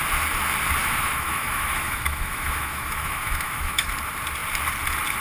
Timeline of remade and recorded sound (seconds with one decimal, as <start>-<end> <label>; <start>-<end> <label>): 0.0-0.8 recorded; 0.8-3.9 remade; 3.9-5.2 recorded